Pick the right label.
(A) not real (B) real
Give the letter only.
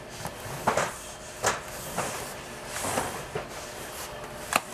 B